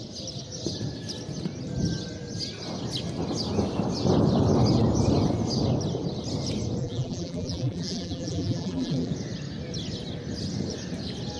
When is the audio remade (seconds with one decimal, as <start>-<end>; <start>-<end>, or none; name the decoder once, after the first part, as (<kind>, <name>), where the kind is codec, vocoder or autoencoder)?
6.8-9.1 (vocoder, BigVGAN v2)